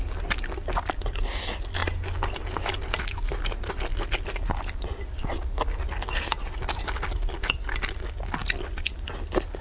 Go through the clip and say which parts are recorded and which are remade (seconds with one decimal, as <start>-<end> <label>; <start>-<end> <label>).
0.0-9.6 recorded